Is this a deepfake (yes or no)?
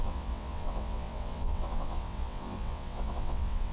yes